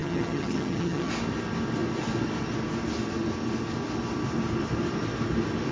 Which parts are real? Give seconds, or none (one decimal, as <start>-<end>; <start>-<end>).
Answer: 1.1-5.7